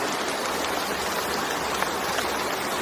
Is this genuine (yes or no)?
yes